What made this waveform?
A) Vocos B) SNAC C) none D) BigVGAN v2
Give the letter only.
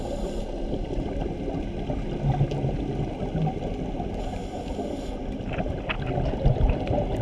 C